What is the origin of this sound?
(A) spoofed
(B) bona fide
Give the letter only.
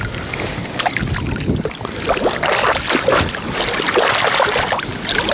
B